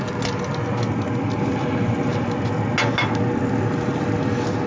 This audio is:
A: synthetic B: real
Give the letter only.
B